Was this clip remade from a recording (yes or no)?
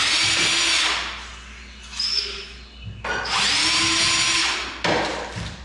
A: no